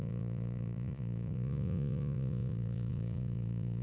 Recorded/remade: remade